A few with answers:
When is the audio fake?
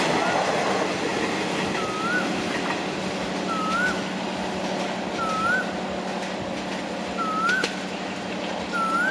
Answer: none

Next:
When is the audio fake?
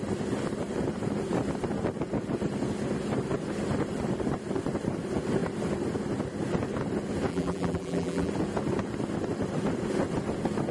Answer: 7.3-8.3 (vocoder, BigVGAN v2)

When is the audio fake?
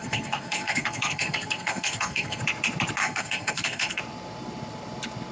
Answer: 0.0-2.4 (codec, SNAC); 3.0-4.0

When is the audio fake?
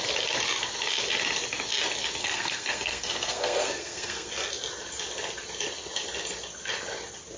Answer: 2.2-4.3 (codec, SNAC)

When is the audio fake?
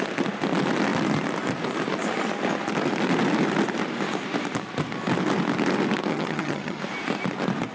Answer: 6.1-6.8 (vocoder, HiFi-GAN)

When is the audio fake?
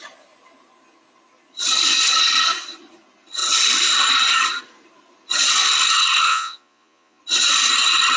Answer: 6.3-7.2 (vocoder, Vocos)